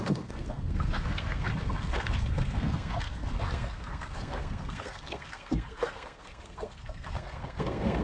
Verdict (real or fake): fake